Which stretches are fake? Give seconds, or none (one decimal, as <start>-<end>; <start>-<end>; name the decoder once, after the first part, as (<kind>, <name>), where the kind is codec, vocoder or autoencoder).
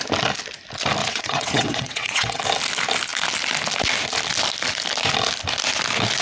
1.0-2.4 (vocoder, WaveNeXt)